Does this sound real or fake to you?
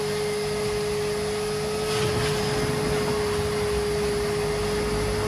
real